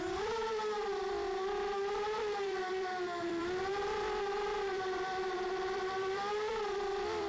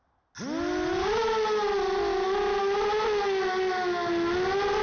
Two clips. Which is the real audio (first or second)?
second